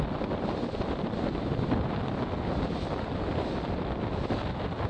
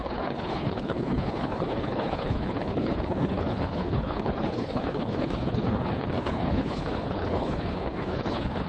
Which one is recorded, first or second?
first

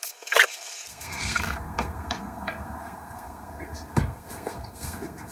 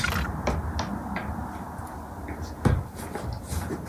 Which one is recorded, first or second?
second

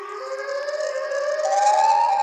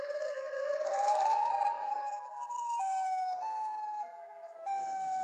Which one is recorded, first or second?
first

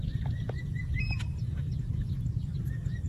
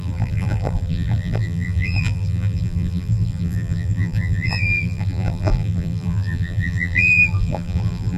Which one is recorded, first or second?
first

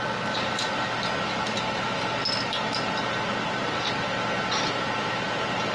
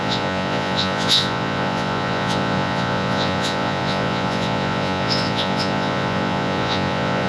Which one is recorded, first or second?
first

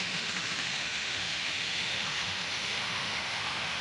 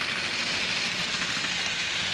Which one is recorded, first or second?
second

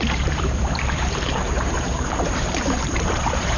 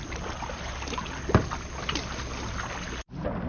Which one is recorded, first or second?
second